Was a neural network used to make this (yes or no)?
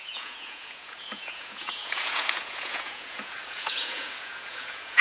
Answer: yes